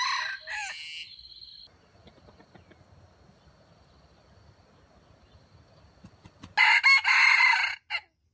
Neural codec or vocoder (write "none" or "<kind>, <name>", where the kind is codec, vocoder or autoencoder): none